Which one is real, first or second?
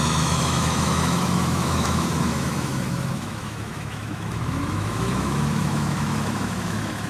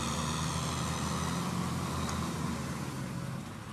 second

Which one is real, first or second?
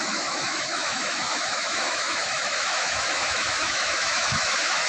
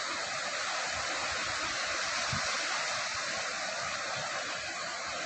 second